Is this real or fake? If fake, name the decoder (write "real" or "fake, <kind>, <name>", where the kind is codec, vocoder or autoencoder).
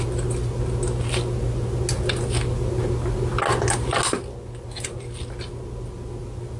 real